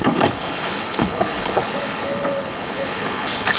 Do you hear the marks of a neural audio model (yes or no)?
yes